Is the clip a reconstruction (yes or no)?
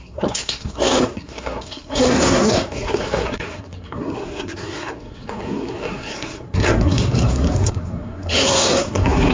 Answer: yes